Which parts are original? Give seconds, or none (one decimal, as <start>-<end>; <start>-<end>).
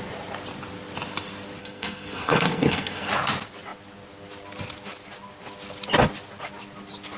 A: 0.0-1.6; 3.1-7.2